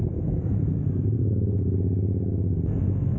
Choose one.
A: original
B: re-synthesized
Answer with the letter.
A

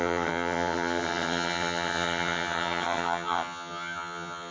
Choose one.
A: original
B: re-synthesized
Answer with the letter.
B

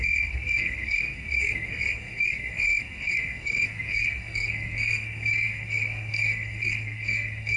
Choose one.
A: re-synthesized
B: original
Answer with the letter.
A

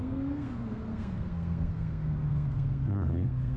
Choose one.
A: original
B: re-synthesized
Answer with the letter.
B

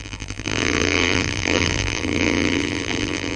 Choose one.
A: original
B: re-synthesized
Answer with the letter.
B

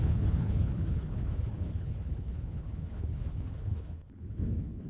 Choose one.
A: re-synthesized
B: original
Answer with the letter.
A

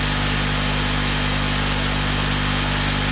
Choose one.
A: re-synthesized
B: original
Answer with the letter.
B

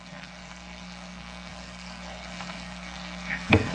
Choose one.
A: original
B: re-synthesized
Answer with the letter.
B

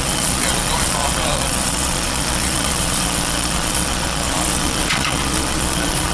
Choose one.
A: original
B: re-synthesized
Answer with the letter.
B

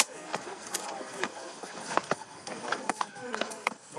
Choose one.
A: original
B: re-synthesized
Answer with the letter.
B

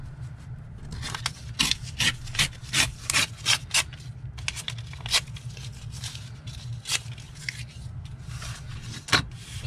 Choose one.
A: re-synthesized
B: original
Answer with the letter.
B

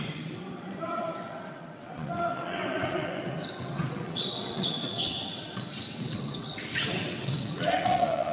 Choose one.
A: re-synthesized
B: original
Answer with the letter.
A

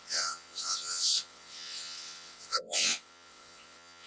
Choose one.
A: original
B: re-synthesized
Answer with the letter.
B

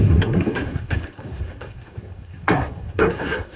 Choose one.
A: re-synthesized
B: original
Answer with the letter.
A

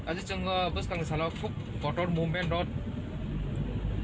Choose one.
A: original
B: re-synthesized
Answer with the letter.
A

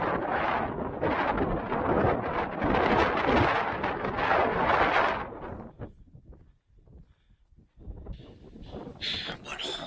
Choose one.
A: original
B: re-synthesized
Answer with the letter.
A